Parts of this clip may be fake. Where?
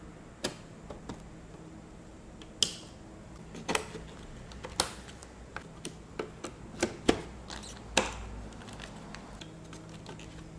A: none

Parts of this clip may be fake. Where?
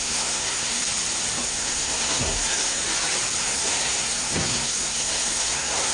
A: 0.0-0.8 (codec, SNAC); 1.5-2.8; 3.4-5.9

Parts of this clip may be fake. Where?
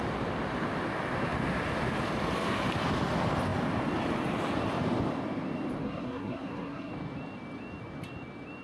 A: 5.8-6.9 (codec, SNAC)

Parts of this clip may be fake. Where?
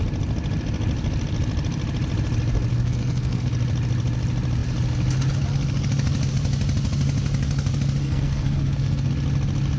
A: 2.7-3.5 (codec, SNAC); 8.0-9.1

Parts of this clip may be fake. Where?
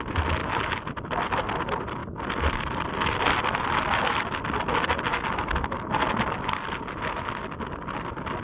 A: none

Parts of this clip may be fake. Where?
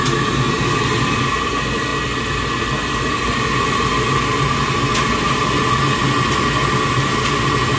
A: none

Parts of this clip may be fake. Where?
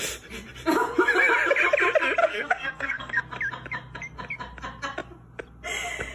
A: 2.2-3.2 (codec, SNAC)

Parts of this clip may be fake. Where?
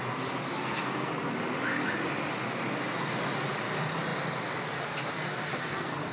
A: 0.6-1.1 (codec, SNAC); 5.5-6.1